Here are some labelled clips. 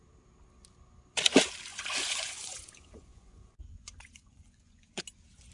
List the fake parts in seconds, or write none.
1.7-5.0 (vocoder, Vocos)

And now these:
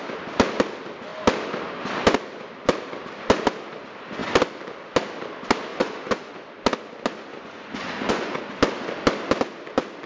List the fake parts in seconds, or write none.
5.7-6.3 (vocoder, Vocos); 7.3-8.4

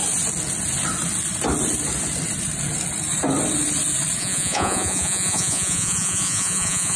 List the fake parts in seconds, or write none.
4.2-7.0 (vocoder, Vocos)

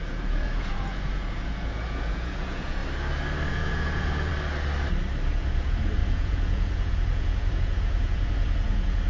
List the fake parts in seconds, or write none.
0.0-2.8 (vocoder, Vocos); 3.5-4.3; 5.3-9.1

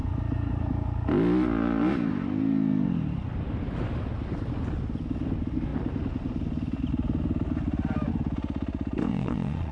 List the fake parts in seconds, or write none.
9.1-9.7 (vocoder, Vocos)

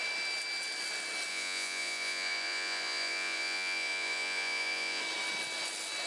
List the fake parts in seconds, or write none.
1.3-5.0 (vocoder, Vocos)

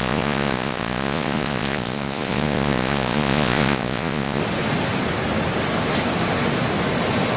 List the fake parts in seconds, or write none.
0.0-4.4 (vocoder, Vocos)

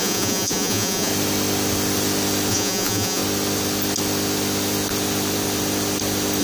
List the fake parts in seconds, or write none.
0.0-1.1 (vocoder, Vocos); 2.5-3.2